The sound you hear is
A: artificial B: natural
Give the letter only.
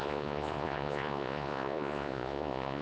A